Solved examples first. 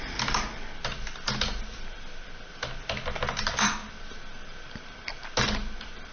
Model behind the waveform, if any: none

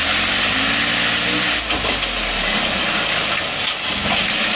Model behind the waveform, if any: none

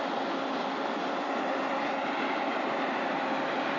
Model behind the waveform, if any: none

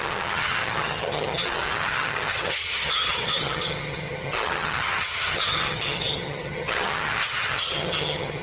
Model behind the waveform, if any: vocoder, HiFi-GAN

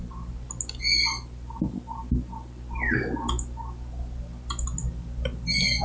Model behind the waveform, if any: none